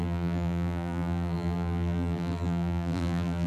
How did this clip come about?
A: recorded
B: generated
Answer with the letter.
B